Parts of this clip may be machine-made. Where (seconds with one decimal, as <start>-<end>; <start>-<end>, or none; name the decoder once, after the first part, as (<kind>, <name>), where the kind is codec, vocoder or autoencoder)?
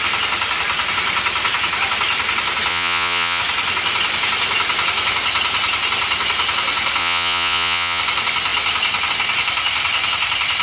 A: 2.7-3.4 (vocoder, Vocos); 7.0-8.0